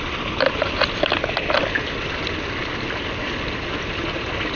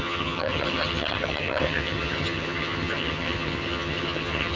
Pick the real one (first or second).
first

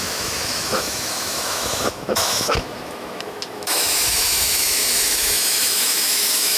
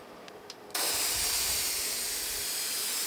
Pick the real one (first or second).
second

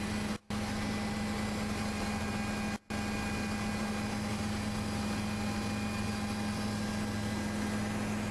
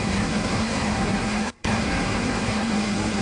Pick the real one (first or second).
first